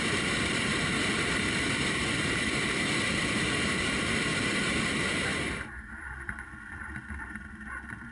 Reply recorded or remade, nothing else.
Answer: remade